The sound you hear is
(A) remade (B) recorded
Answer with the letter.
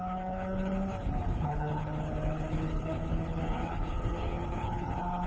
A